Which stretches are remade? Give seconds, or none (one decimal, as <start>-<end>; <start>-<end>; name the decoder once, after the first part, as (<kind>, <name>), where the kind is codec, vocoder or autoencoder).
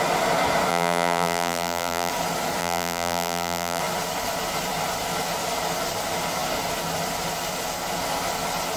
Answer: 0.7-2.1 (vocoder, BigVGAN v2); 2.6-3.8